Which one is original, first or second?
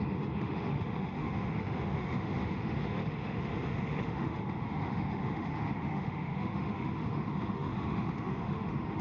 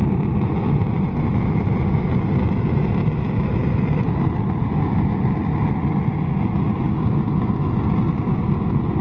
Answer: second